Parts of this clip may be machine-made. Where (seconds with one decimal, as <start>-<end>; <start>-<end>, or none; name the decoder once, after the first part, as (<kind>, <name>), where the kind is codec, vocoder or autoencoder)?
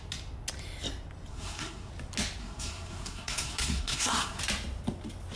1.3-1.9 (codec, SNAC); 2.4-4.4